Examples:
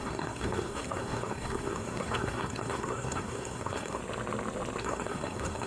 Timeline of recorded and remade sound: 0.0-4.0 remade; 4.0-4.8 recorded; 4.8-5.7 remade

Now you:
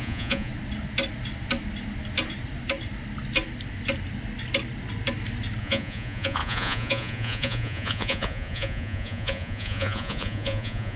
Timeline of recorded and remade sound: 0.0-0.5 remade; 0.5-5.6 recorded; 5.6-11.0 remade